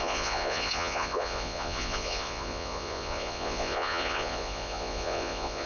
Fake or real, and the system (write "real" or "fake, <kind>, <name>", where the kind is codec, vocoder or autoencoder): fake, vocoder, Vocos